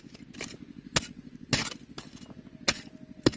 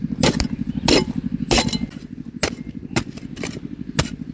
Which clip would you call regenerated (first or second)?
second